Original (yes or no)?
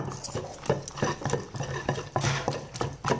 yes